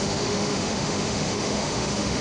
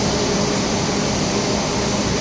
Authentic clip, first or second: second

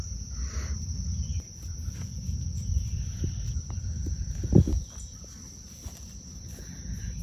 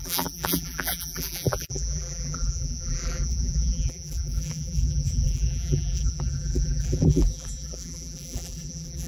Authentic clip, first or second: first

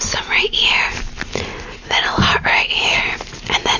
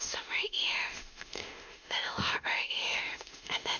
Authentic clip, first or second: first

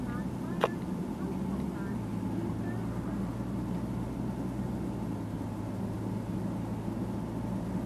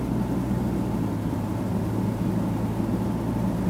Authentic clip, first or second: first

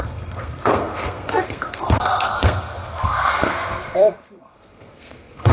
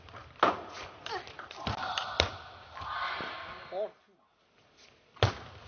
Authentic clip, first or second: second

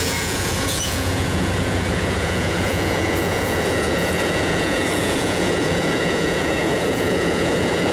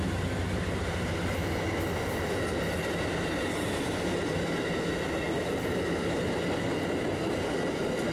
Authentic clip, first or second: second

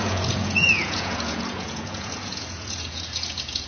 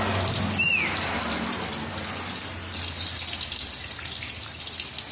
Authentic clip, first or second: second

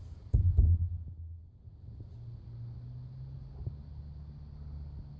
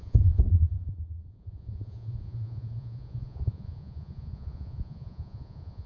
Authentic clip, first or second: first